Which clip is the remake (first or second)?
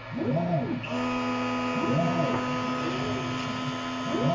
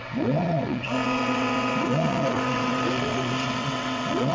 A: second